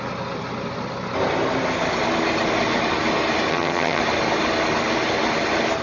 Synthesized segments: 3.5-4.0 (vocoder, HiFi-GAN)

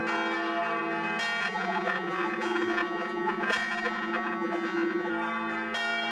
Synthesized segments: 1.4-5.1 (vocoder, Vocos)

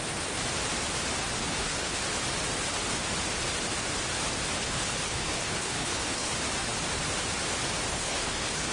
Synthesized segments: 1.4-2.0 (codec, HILCodec); 4.6-6.3; 7.9-8.7